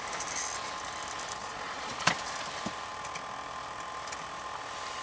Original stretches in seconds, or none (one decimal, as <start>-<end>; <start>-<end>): 0.0-1.4; 2.1-5.0